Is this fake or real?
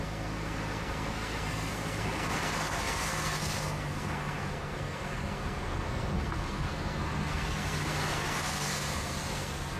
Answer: fake